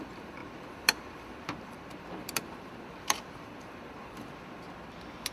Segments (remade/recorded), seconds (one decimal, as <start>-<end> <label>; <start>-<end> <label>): 0.0-5.3 remade